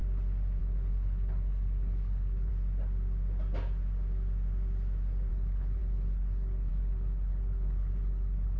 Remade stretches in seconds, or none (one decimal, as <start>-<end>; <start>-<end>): 0.6-2.5; 5.3-8.6